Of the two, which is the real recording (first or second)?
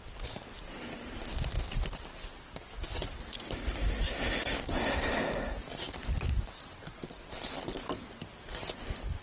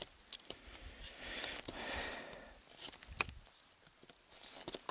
first